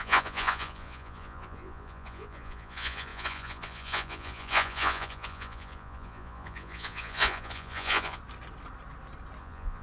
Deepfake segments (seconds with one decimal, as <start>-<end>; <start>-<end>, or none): 0.0-8.2; 9.4-9.8